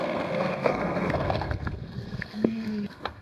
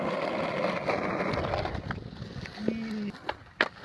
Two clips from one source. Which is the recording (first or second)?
second